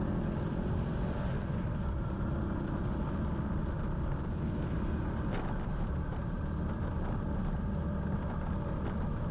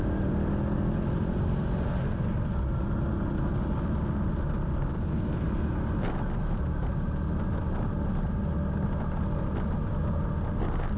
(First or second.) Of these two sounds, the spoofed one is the first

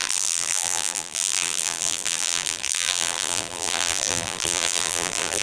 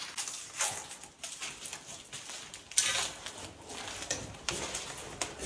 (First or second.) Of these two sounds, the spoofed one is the first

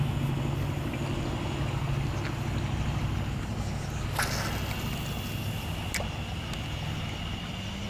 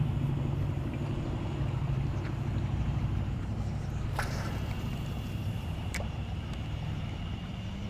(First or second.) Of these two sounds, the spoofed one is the second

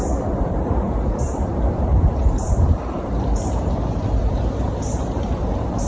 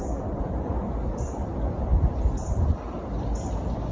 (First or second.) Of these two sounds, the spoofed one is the first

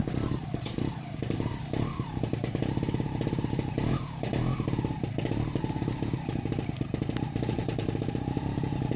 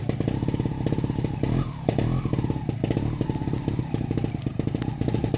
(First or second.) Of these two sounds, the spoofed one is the first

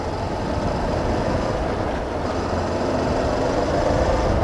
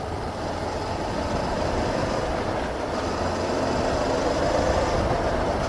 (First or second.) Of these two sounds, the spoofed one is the second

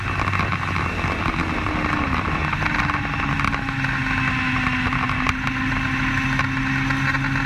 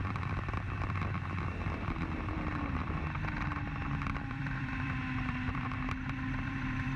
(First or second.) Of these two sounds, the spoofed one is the second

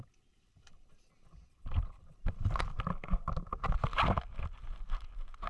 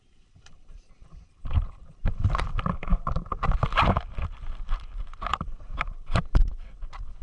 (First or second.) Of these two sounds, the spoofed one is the second